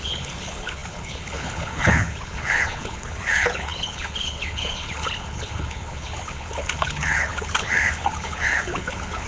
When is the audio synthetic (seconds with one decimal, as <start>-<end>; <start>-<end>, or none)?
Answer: 0.0-9.3